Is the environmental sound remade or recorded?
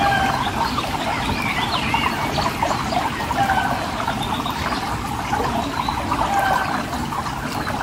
recorded